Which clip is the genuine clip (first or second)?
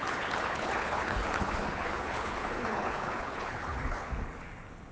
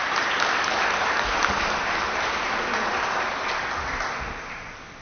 second